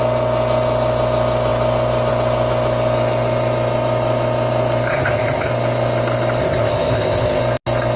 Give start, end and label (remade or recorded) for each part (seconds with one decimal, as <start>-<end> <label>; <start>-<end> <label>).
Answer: 0.0-4.9 recorded; 4.9-5.5 remade; 5.5-6.4 recorded; 6.4-7.4 remade; 7.4-8.0 recorded

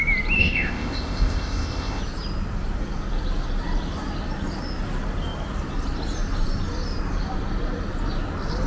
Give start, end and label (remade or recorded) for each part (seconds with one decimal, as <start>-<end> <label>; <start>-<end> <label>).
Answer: 0.0-0.4 recorded; 0.4-2.0 remade; 2.0-8.7 recorded

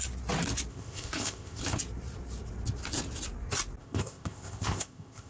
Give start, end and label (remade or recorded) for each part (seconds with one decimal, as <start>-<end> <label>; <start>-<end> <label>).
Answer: 0.0-0.7 recorded; 0.7-1.6 remade; 1.6-3.8 recorded; 3.8-5.3 remade

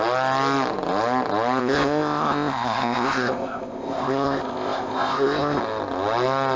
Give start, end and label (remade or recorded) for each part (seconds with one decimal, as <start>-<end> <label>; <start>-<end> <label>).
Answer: 0.0-1.6 recorded; 1.6-5.6 remade; 5.6-6.6 recorded

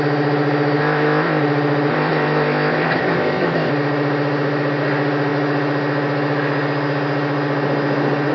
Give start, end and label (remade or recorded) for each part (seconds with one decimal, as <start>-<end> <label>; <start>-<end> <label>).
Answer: 0.0-0.8 recorded; 0.8-1.4 remade; 1.4-1.9 recorded; 1.9-3.7 remade; 3.7-8.3 recorded